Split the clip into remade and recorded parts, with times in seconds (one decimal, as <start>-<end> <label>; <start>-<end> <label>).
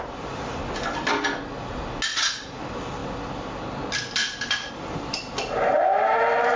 0.0-2.1 recorded; 2.1-2.6 remade; 2.6-6.6 recorded